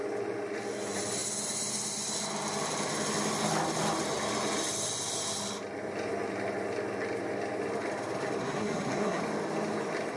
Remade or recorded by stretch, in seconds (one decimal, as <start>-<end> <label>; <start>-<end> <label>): 0.0-8.4 recorded; 8.4-9.2 remade; 9.2-10.2 recorded